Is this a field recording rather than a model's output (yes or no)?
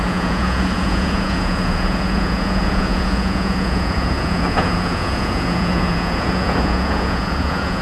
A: no